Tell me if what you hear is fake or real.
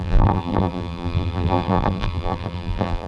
fake